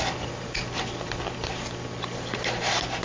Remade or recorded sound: recorded